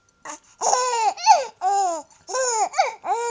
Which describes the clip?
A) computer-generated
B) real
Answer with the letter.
B